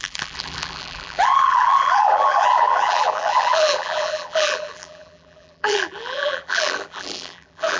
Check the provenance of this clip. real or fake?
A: fake